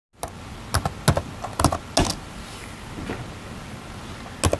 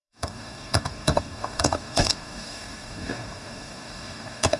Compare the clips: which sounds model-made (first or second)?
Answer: second